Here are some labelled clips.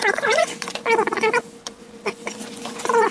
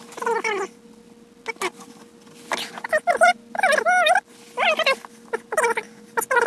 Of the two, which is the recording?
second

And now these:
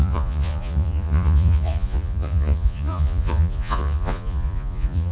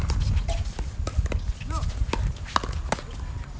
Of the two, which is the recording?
second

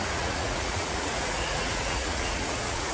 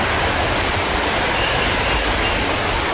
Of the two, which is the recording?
second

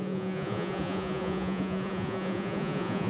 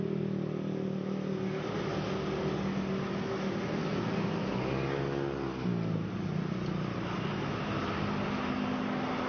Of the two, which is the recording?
second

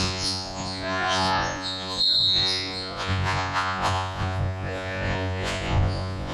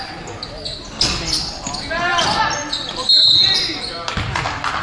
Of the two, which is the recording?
second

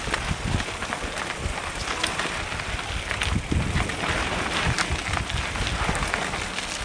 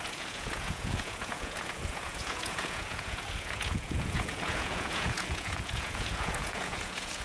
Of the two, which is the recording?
first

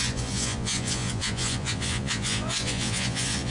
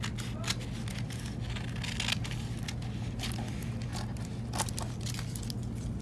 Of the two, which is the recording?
second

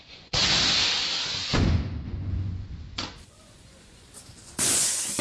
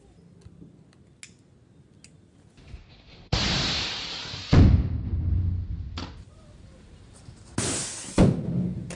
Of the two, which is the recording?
second